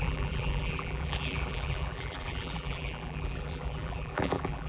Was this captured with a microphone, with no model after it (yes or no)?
no